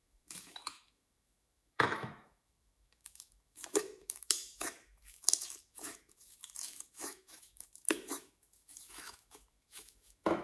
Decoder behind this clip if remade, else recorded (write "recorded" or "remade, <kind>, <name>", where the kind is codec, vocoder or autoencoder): remade, autoencoder, DAC-VAE